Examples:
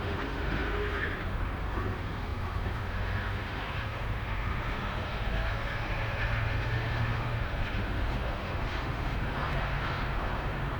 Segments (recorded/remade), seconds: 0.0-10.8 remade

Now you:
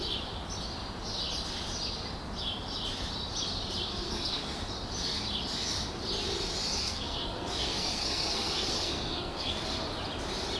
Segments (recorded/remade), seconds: 0.0-3.9 recorded; 3.9-4.6 remade; 4.6-6.8 recorded; 6.8-9.6 remade; 9.6-10.6 recorded

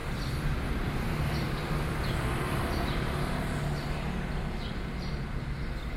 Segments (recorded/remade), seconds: 0.0-3.6 remade; 3.6-6.0 recorded

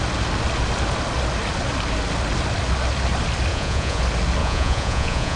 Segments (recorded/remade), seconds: 0.0-3.5 recorded; 3.5-4.0 remade; 4.0-4.4 recorded; 4.4-5.4 remade

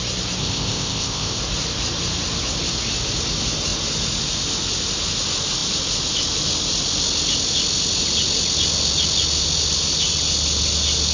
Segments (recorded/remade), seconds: 0.0-0.4 recorded; 0.4-1.4 remade; 1.4-11.1 recorded

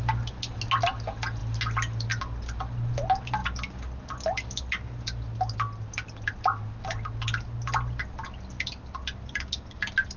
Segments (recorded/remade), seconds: 0.0-10.2 recorded